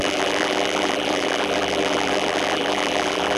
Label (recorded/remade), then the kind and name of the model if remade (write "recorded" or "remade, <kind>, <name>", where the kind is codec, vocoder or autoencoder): remade, vocoder, BigVGAN v2